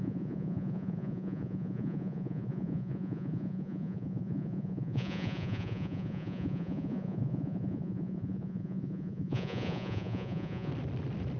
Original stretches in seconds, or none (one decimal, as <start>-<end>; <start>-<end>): 10.7-11.4